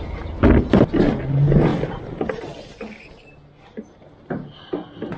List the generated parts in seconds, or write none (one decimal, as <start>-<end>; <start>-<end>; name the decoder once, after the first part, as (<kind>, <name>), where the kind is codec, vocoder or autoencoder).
1.7-3.1 (vocoder, BigVGAN v2)